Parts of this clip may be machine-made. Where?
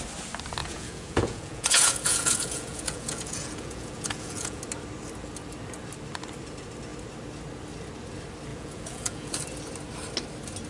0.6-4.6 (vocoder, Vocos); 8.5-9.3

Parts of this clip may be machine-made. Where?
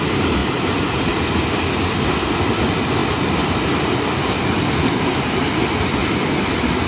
none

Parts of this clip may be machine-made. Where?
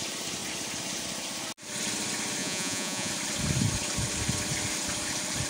2.4-3.1 (vocoder, Vocos)